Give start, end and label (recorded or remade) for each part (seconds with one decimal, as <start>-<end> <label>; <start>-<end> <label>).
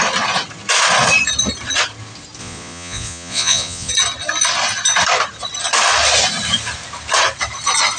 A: 0.0-2.4 recorded; 2.4-3.9 remade; 3.9-8.0 recorded